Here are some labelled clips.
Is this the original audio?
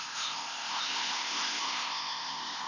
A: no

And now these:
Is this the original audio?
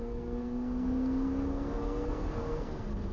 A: no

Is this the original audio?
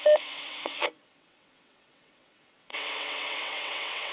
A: no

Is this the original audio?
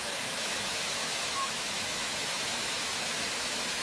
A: no